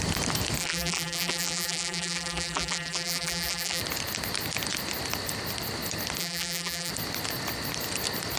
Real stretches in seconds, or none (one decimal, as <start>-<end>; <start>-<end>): 0.0-0.6; 3.8-6.2; 6.9-8.4